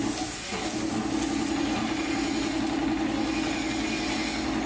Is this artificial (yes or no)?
no